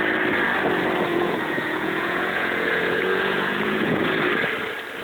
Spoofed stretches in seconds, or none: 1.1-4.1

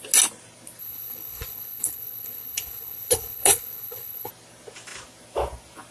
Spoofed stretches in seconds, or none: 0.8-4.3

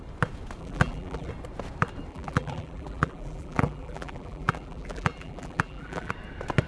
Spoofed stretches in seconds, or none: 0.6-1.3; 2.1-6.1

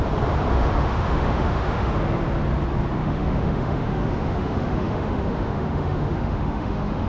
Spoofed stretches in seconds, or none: 0.5-1.9; 3.0-7.1

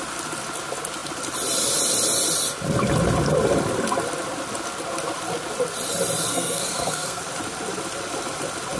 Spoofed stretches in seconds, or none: 6.3-7.2